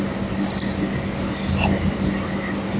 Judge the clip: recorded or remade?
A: recorded